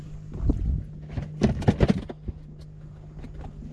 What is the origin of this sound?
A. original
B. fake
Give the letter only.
A